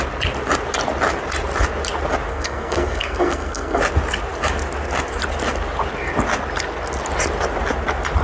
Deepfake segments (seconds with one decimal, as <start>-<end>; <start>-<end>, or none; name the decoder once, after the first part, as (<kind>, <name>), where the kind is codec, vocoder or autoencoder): 2.3-3.8 (codec, SNAC)